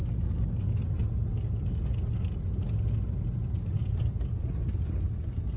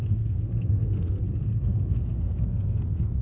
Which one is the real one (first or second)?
first